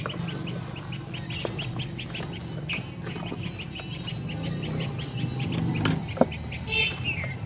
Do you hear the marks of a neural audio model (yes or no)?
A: no